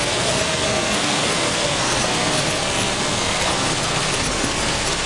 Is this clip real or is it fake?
fake